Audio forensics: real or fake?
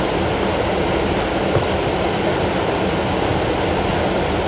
real